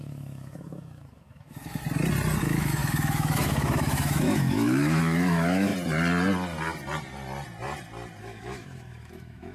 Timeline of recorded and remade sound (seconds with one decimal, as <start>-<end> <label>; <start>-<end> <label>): 0.0-1.8 remade; 1.8-2.4 recorded; 2.4-5.7 remade; 5.7-8.2 recorded; 8.2-9.5 remade